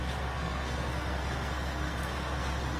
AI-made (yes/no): yes